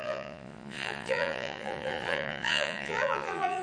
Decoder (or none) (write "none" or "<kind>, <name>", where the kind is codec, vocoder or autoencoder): vocoder, Vocos